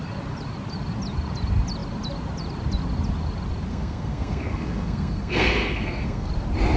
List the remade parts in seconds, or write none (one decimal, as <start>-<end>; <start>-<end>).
3.7-6.3